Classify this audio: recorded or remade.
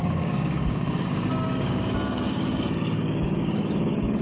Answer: remade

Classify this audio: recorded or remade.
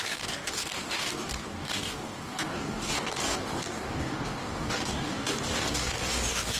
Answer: remade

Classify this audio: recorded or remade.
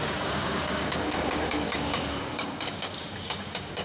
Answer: remade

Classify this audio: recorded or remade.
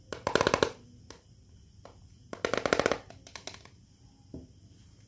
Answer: recorded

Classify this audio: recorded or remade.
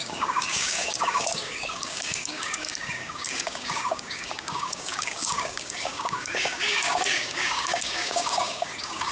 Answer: remade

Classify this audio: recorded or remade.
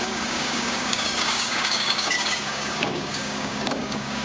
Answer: remade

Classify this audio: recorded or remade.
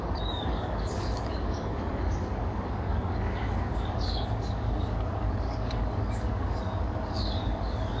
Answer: remade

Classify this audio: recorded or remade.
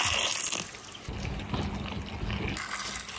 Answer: recorded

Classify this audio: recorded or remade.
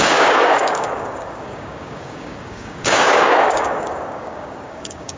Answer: remade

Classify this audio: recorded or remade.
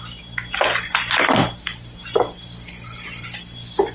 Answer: recorded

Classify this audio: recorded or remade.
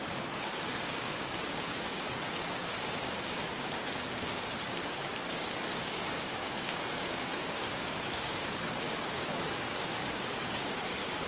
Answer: remade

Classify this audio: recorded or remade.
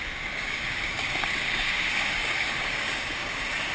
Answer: remade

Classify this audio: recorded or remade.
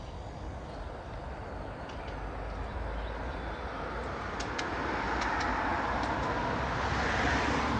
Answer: recorded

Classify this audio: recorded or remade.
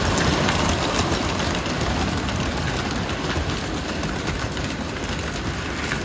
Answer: recorded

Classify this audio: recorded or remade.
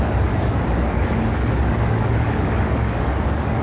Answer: remade